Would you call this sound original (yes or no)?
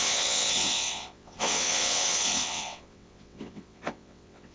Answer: no